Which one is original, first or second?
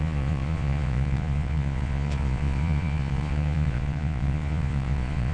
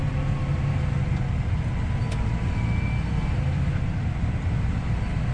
second